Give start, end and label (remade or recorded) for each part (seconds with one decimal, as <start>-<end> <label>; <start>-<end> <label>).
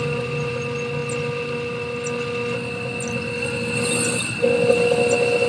0.0-5.5 recorded